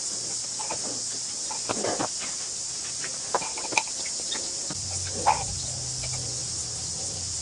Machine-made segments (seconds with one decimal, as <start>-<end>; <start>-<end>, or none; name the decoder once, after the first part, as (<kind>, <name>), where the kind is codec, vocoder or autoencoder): none